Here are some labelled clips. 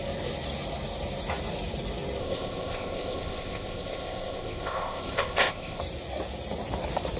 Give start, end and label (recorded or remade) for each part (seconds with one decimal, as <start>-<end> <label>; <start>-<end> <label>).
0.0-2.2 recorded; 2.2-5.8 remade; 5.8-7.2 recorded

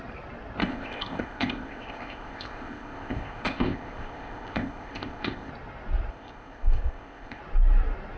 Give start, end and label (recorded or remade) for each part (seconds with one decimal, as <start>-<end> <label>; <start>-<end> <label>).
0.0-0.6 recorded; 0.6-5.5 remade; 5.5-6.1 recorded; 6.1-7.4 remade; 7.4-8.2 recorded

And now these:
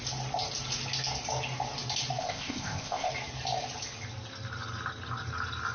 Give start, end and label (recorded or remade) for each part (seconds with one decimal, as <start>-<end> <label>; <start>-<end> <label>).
0.0-2.2 recorded; 2.2-3.1 remade; 3.1-5.7 recorded